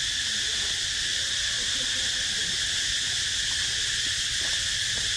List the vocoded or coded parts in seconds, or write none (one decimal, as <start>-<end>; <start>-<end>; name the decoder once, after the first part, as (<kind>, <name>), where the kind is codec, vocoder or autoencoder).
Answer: none